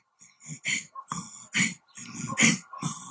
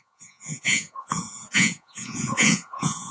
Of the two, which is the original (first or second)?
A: first